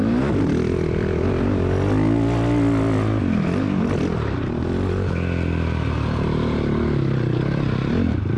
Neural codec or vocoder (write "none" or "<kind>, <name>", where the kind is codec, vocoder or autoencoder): none